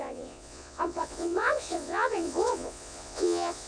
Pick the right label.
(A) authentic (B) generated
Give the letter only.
B